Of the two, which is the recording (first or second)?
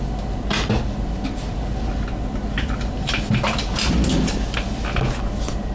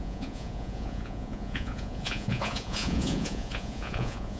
first